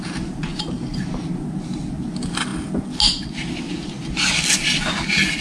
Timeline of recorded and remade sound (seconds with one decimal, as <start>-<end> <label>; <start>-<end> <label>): 0.0-0.5 recorded; 0.5-1.1 remade; 1.1-5.4 recorded